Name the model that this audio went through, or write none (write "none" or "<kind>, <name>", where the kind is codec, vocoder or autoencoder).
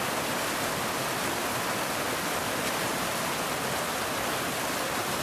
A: none